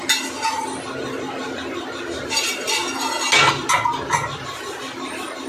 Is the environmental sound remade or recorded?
recorded